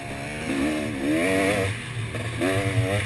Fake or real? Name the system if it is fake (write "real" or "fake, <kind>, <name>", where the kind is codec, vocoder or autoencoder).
real